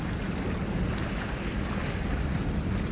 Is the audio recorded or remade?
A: recorded